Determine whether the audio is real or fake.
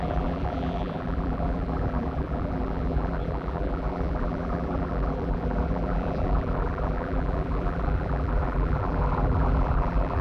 fake